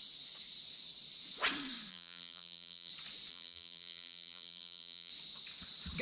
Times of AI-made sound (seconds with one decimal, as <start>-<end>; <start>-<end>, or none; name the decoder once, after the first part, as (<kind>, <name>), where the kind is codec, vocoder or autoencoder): 1.9-2.9 (vocoder, BigVGAN v2); 3.3-5.1